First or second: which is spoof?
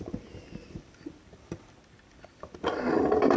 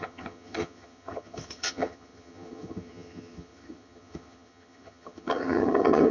second